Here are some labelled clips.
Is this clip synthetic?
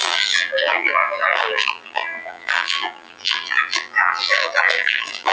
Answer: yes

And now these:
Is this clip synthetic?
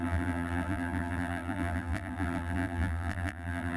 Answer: yes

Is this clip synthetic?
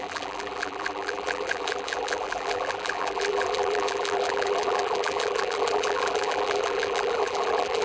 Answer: yes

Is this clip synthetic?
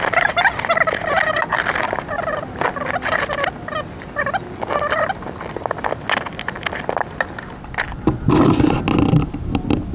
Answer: no